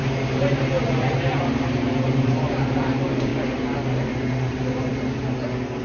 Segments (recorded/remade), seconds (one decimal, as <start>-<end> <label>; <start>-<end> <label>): 0.0-3.3 remade; 3.3-4.5 recorded; 4.5-4.9 remade; 4.9-5.8 recorded